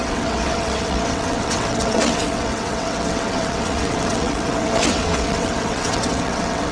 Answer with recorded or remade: remade